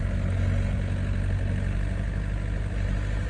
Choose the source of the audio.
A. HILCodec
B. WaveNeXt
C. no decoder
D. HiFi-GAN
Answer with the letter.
C